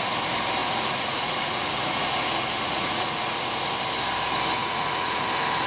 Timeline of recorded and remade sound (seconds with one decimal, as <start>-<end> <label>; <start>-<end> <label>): 0.0-0.6 recorded; 0.6-3.5 remade; 3.5-4.6 recorded; 4.6-5.2 remade; 5.2-5.7 recorded